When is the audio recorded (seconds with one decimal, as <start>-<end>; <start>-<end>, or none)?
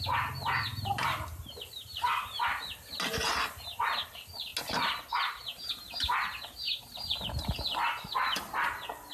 0.0-9.1